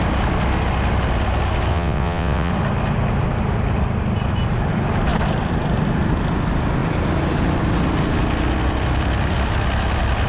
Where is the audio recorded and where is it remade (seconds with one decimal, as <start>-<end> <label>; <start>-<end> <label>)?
0.0-1.7 recorded; 1.7-2.5 remade; 2.5-10.3 recorded